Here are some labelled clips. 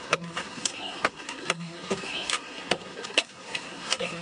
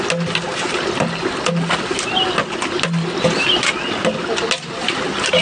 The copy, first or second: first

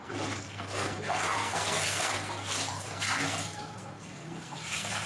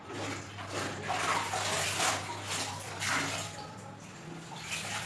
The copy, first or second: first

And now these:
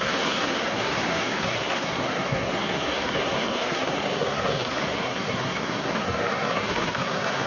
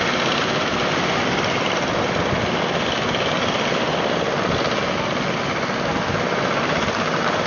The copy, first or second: first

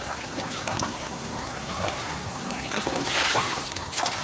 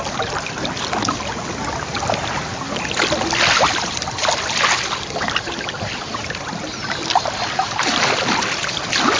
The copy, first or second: first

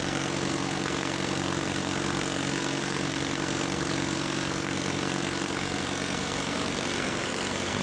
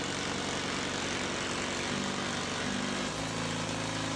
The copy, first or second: first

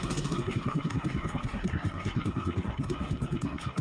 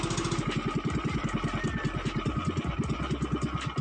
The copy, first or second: first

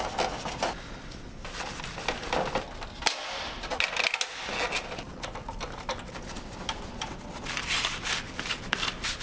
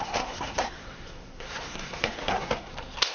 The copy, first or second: second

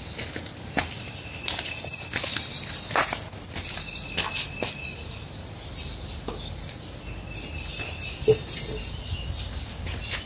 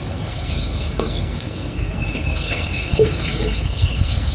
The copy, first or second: second